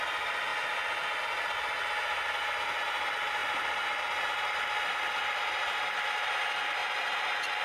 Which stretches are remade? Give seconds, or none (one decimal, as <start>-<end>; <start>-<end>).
0.0-0.5; 2.3-3.4; 4.9-7.6